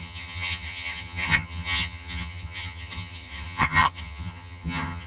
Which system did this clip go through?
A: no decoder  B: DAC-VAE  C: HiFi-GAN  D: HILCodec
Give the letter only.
C